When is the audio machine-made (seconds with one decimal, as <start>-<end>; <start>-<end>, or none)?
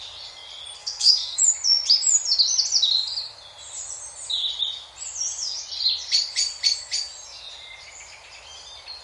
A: 0.8-1.4